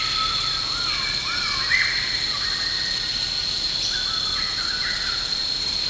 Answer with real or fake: real